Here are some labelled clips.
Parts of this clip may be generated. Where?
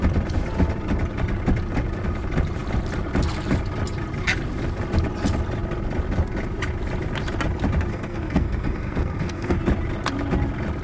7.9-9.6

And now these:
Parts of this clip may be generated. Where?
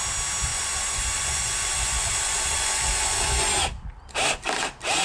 0.5-3.5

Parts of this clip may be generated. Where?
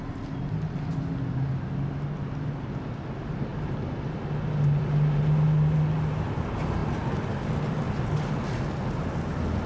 none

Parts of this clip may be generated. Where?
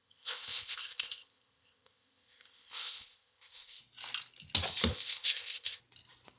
0.0-3.8; 4.9-5.8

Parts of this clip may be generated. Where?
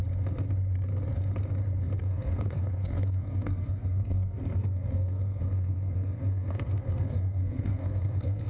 2.0-8.5